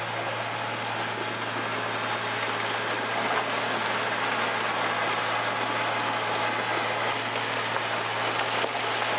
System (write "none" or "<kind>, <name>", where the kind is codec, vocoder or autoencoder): none